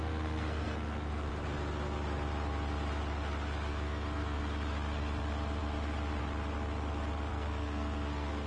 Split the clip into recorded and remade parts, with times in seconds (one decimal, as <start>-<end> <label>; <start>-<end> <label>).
0.0-1.3 remade; 1.3-3.7 recorded; 3.7-4.4 remade; 4.4-7.3 recorded; 7.3-8.5 remade